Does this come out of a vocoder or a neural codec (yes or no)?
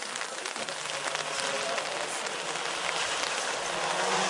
no